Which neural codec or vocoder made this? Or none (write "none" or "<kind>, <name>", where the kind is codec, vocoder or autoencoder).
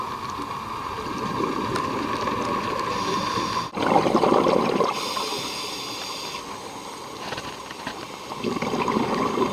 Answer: none